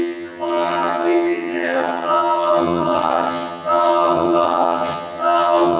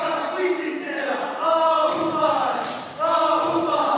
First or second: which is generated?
first